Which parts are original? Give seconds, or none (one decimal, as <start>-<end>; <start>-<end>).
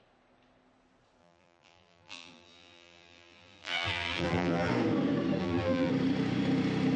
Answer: 0.0-1.2; 4.7-5.4; 5.9-7.0